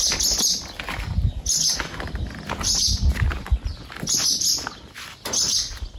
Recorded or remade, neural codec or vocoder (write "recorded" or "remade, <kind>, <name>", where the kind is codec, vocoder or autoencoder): recorded